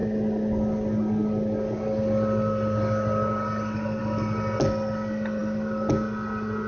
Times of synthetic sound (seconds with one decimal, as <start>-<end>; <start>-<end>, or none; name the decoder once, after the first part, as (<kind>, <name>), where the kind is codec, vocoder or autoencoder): none